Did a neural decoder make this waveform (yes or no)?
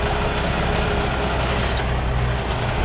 no